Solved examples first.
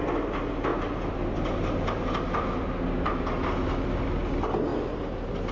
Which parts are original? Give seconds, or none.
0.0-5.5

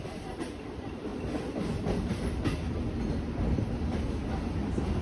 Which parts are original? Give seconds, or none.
0.0-5.0

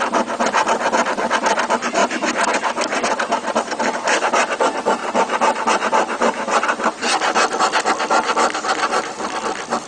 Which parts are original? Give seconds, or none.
0.0-2.0; 3.6-9.9

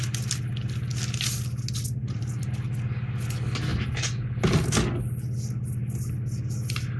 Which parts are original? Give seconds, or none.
0.0-2.0; 2.5-7.0

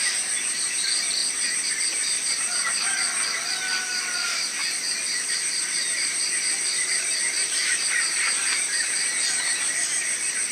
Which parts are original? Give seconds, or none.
0.0-1.2; 1.7-4.6; 9.0-10.5